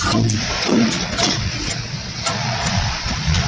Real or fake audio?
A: fake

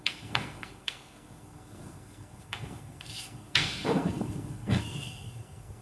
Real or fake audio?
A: fake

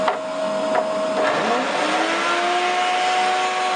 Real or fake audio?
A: real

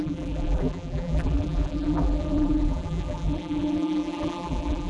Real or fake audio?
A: fake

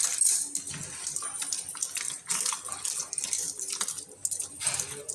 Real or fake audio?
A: real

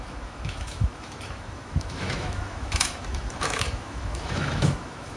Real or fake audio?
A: fake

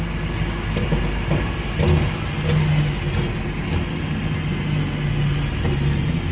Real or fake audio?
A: real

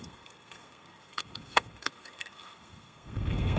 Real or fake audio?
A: fake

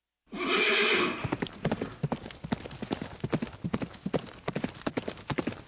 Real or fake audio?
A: real